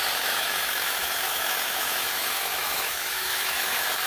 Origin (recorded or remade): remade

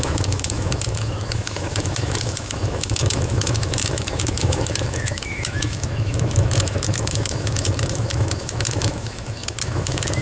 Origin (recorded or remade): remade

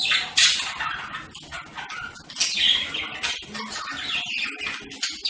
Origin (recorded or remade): recorded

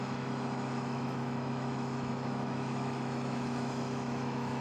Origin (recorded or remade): remade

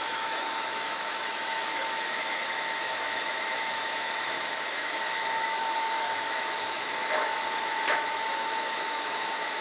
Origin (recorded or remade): remade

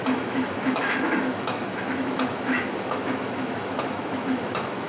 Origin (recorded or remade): remade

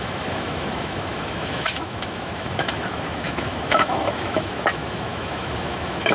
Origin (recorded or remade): remade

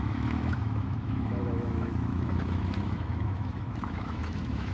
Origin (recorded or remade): remade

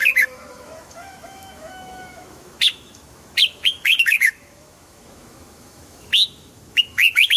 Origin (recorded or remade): remade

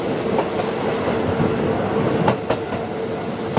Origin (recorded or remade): recorded